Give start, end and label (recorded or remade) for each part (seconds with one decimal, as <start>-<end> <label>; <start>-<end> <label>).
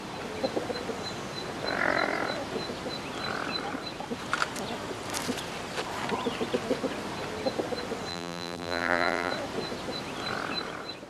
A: 0.0-8.1 recorded; 8.1-9.3 remade; 9.3-11.1 recorded